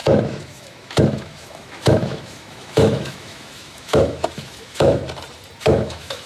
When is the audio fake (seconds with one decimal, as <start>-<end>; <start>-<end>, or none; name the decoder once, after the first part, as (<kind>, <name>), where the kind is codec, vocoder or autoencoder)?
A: 0.0-5.0 (autoencoder, DAC-VAE); 5.6-6.3